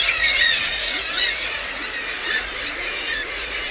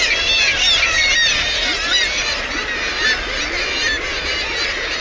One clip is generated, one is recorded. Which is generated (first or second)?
first